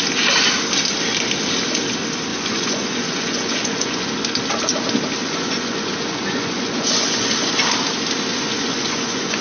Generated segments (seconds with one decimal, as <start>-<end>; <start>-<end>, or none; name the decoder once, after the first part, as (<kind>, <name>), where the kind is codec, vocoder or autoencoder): 2.3-4.1 (vocoder, Vocos); 5.2-7.3; 8.3-9.4

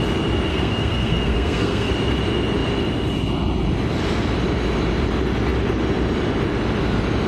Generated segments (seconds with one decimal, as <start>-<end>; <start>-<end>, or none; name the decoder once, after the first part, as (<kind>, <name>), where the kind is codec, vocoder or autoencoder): 0.5-1.9 (codec, SNAC)

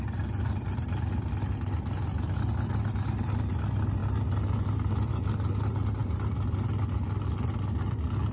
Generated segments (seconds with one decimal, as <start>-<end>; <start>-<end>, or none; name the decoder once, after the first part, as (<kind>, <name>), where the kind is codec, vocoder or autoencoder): none

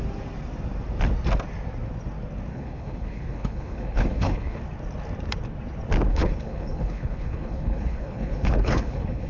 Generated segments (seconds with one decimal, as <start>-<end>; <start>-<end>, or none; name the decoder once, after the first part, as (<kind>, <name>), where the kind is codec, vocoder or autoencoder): 2.5-4.6 (codec, HILCodec); 6.1-9.3

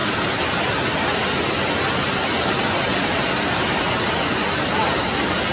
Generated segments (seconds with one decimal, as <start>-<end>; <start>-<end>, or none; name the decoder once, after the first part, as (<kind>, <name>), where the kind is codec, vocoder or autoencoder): none

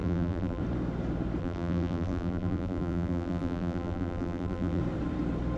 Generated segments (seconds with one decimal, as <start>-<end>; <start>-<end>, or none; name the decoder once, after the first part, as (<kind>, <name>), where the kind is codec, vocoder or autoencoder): 0.0-0.6 (vocoder, BigVGAN v2); 1.4-4.8